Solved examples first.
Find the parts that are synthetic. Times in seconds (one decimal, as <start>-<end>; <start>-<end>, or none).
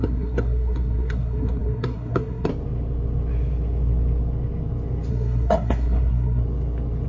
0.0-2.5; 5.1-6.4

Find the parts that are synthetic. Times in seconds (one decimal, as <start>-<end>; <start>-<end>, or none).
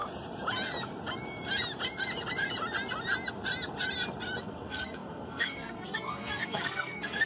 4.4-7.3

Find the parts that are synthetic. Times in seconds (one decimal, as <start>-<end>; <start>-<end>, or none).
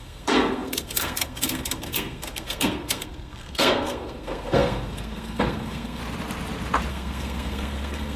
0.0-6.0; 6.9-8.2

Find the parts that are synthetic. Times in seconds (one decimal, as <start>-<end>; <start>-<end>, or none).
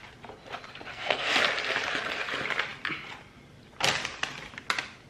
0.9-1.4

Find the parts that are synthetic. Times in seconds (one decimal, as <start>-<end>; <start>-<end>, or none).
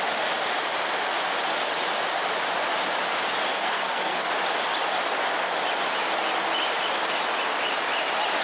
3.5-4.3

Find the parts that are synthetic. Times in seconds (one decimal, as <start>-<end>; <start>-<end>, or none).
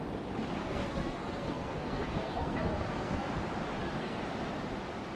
0.6-3.3; 3.8-4.3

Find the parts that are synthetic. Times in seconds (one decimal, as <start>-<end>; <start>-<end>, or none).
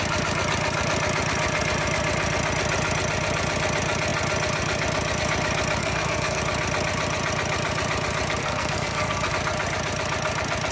5.8-6.4; 8.4-9.3